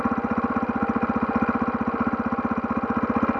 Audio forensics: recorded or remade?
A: recorded